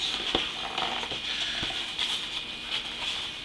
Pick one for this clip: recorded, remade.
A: recorded